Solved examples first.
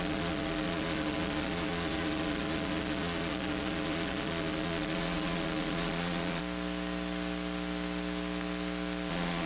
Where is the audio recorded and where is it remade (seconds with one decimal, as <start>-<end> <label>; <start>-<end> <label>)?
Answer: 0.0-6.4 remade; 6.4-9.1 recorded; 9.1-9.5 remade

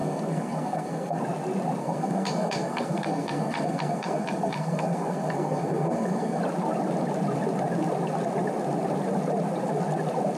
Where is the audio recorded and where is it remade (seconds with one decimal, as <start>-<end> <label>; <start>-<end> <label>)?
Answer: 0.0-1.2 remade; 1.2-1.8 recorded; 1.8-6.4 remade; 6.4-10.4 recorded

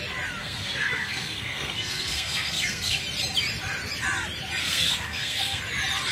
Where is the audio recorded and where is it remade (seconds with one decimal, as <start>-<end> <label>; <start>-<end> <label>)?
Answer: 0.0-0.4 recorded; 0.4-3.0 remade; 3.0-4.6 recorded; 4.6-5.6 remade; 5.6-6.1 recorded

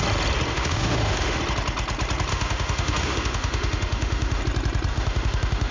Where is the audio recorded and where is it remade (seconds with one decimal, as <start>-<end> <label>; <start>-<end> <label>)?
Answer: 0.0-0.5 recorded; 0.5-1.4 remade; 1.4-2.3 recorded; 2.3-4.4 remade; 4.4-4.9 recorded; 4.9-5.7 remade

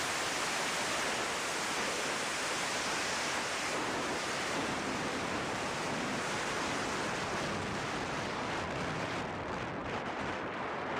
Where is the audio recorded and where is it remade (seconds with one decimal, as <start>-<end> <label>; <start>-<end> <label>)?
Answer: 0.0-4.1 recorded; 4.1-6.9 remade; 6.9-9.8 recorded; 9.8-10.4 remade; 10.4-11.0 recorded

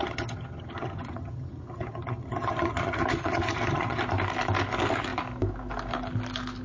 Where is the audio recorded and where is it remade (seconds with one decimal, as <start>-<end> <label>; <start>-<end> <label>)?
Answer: 0.0-4.0 remade; 4.0-6.6 recorded